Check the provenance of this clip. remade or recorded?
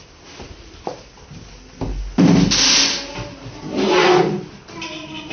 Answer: recorded